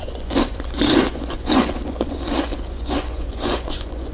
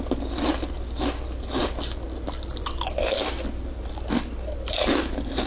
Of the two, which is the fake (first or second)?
first